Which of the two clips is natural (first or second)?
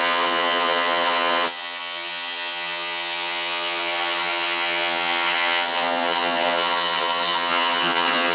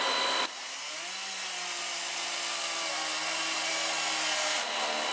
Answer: second